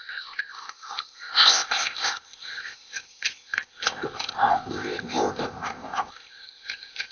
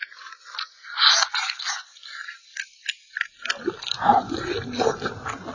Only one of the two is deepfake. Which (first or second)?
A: first